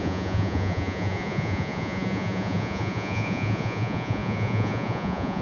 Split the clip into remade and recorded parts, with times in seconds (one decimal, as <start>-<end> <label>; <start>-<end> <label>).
0.0-5.4 remade